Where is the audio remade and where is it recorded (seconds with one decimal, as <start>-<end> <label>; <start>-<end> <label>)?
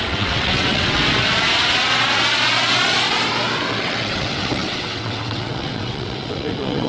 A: 0.0-1.0 remade; 1.0-3.7 recorded; 3.7-6.9 remade